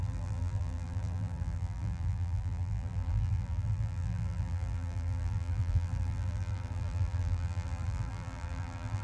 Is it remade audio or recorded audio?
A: remade